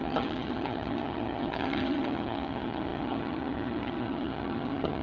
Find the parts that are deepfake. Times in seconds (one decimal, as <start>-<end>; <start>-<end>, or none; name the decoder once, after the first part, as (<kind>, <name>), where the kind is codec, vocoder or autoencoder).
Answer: 0.0-5.0 (vocoder, HiFi-GAN)